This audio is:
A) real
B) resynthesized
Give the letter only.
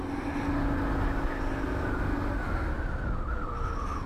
A